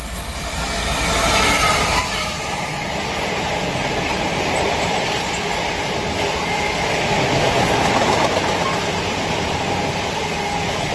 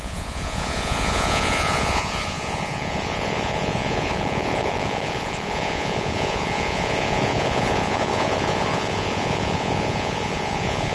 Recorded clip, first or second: first